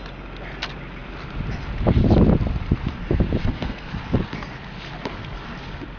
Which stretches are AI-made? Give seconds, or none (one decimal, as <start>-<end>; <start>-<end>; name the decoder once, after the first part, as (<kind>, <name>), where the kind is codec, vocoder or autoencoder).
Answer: 3.4-3.9 (codec, SNAC)